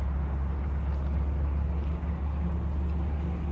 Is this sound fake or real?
real